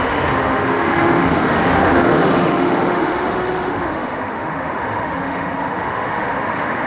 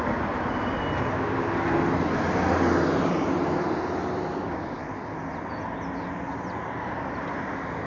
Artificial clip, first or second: first